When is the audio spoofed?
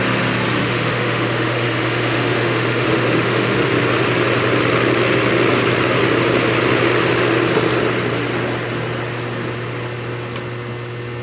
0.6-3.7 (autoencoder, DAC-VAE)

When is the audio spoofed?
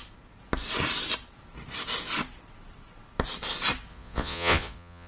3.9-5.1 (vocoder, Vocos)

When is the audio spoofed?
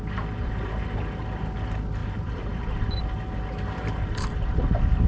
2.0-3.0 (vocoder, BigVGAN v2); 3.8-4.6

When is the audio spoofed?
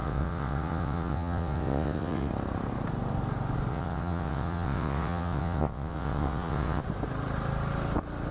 0.0-2.3 (vocoder, WaveNeXt); 3.7-6.8